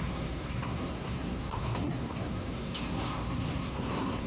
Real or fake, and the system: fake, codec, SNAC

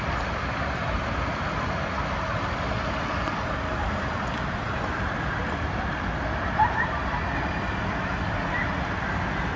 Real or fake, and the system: real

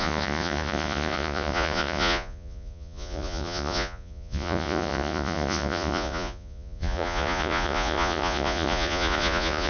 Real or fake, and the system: fake, vocoder, Vocos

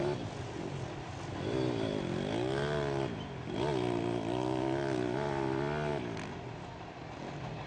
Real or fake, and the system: real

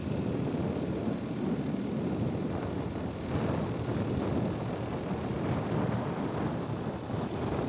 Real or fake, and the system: fake, vocoder, BigVGAN v2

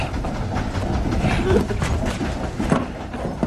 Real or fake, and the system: real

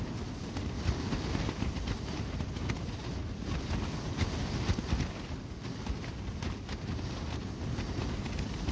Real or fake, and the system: real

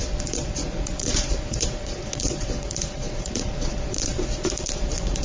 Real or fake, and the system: fake, vocoder, Vocos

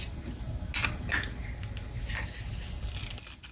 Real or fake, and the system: real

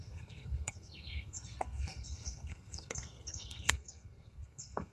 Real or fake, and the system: fake, codec, SNAC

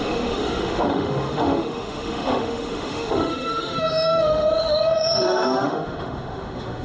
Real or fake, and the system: fake, autoencoder, DAC-VAE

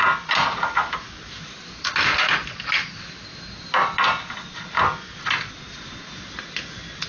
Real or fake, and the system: real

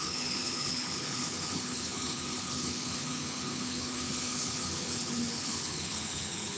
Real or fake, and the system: fake, codec, HILCodec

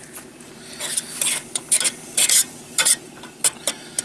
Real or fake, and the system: fake, vocoder, BigVGAN v2